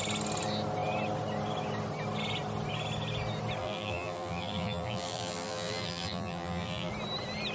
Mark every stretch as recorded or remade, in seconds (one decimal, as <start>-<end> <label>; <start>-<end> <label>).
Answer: 0.0-3.6 recorded; 3.6-6.9 remade; 6.9-7.5 recorded

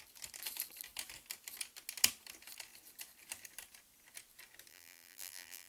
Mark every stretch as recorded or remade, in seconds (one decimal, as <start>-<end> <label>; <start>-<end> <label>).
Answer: 0.0-4.7 recorded; 4.7-5.7 remade

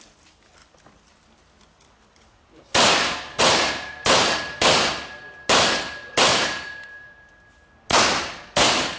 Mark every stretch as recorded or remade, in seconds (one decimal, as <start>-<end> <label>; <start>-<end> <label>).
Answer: 0.0-0.6 recorded; 0.6-3.4 remade; 3.4-6.3 recorded; 6.3-7.3 remade; 7.3-9.0 recorded